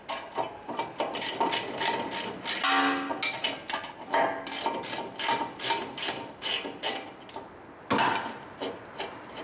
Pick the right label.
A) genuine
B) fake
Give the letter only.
A